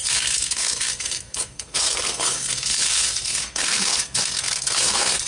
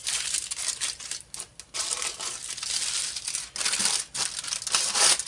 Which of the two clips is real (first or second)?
second